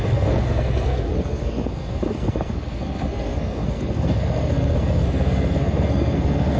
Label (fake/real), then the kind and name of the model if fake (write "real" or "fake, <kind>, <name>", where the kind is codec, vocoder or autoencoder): fake, codec, SNAC